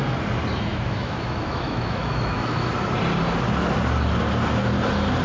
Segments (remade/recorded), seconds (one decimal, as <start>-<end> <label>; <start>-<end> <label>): 0.0-0.7 recorded; 0.7-2.7 remade; 2.7-5.2 recorded